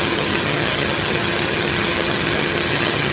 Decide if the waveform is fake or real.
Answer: fake